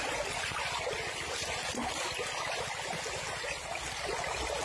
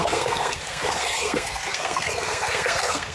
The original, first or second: first